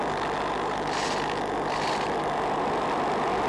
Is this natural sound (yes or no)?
yes